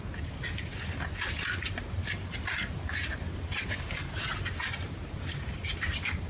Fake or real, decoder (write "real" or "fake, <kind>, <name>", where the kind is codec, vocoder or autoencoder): real